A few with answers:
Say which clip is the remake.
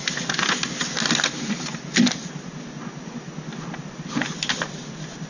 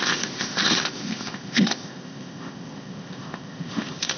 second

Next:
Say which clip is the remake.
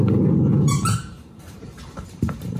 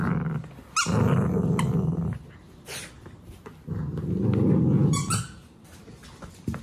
first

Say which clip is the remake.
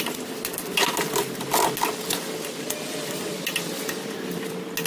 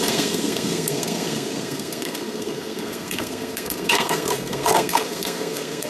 second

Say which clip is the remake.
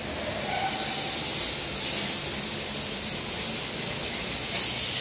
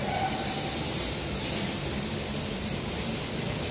second